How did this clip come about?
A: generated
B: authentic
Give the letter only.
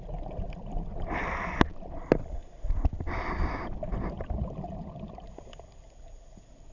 B